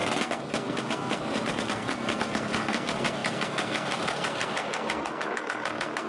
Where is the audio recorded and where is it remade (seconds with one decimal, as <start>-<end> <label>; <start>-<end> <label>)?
0.0-6.1 remade